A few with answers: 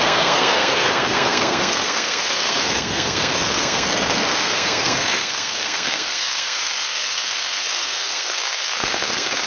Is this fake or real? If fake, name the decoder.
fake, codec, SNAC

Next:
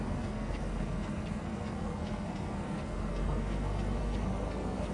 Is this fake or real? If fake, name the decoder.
fake, codec, SNAC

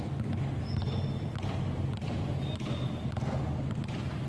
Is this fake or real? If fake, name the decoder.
real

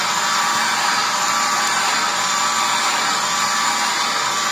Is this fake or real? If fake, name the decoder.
real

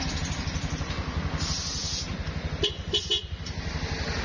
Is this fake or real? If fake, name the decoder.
real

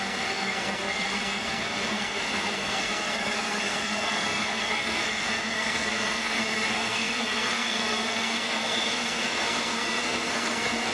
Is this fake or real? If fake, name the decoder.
fake, codec, SNAC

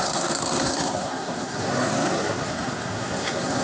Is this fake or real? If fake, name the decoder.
fake, codec, SNAC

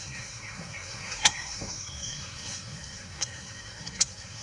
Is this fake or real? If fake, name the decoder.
fake, codec, SNAC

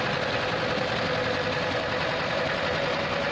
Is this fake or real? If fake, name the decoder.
real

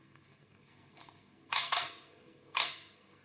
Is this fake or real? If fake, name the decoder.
fake, codec, SNAC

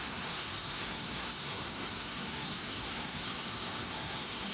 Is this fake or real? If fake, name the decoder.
fake, codec, SNAC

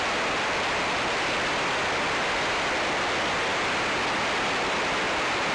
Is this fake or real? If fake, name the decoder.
real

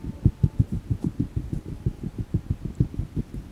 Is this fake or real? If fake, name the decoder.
real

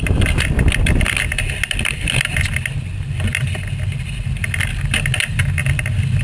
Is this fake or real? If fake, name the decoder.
real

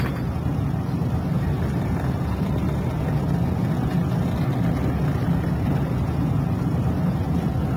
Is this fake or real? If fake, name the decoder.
real